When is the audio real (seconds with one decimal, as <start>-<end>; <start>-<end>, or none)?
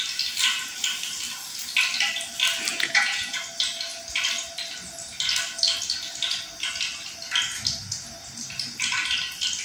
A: 0.0-2.7; 3.4-9.6